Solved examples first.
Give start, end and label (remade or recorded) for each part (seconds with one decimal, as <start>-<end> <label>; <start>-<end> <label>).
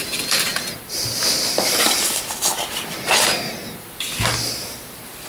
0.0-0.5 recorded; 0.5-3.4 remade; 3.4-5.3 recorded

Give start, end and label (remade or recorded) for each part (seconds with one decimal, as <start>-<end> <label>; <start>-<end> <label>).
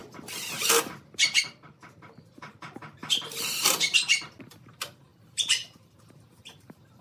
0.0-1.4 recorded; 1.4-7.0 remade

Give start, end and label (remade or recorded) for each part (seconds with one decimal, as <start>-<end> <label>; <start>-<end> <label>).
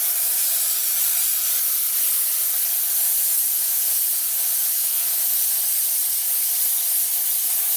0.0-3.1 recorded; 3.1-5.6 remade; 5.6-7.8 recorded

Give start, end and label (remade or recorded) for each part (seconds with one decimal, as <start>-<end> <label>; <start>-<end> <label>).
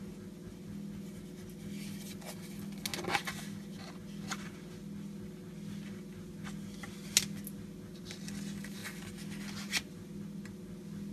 0.0-11.1 recorded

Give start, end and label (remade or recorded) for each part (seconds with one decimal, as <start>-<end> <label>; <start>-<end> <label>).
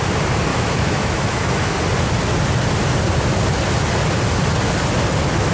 0.0-0.5 recorded; 0.5-1.8 remade; 1.8-5.5 recorded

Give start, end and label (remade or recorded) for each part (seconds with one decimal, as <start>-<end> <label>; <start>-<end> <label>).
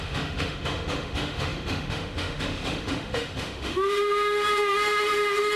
0.0-5.6 remade